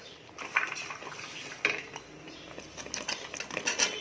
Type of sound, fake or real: real